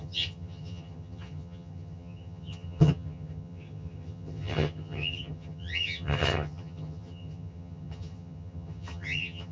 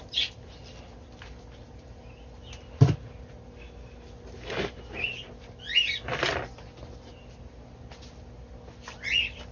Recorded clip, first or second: second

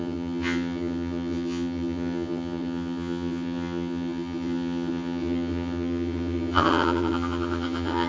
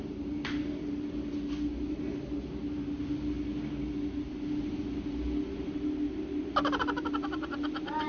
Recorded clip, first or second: second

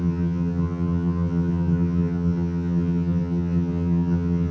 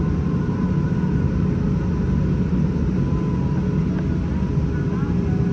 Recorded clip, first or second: second